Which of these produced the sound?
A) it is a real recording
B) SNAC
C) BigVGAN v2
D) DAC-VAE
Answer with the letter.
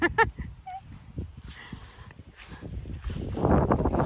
A